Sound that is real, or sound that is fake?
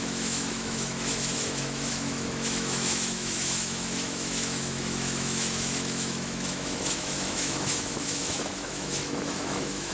fake